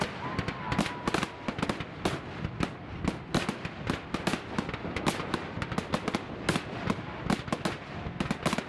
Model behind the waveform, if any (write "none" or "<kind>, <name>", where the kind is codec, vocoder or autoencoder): none